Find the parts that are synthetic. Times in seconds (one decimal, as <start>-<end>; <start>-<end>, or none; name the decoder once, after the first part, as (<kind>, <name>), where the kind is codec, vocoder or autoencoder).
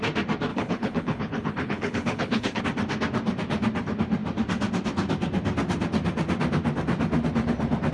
0.5-2.6 (codec, HILCodec)